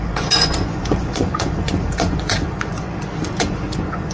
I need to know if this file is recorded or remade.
remade